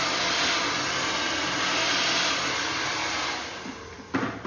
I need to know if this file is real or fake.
real